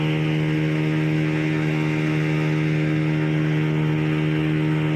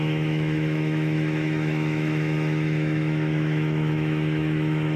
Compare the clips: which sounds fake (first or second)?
second